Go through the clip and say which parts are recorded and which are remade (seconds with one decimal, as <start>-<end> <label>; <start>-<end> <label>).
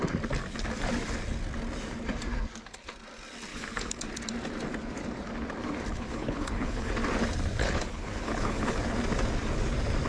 0.0-3.5 recorded; 3.5-4.0 remade; 4.0-5.9 recorded; 5.9-6.9 remade; 6.9-7.6 recorded; 7.6-8.8 remade; 8.8-10.1 recorded